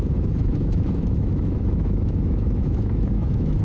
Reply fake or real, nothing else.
fake